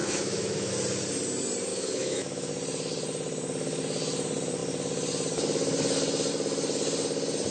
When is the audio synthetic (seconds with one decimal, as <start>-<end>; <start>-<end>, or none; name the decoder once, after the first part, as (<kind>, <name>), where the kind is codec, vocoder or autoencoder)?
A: 0.0-0.7 (autoencoder, DAC-VAE); 1.7-2.5